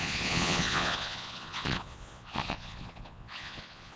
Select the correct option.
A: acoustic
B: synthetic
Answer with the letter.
B